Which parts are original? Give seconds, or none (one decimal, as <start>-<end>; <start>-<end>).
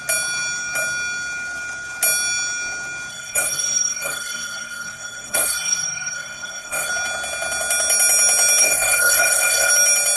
0.0-3.1; 6.9-8.6; 9.7-10.2